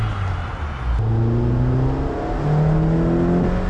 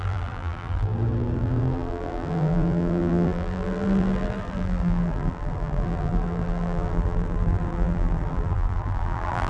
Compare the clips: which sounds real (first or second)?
first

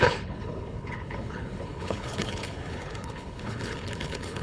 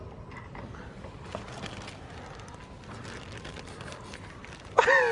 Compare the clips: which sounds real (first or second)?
second